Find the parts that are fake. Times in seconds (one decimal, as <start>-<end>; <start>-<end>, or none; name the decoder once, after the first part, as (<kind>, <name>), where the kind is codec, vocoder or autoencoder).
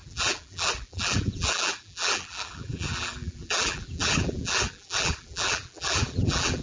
0.0-6.6 (vocoder, BigVGAN v2)